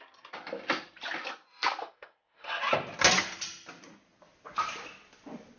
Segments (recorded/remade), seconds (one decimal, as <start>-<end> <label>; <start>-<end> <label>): 0.0-1.8 recorded; 1.8-2.6 remade; 2.6-5.6 recorded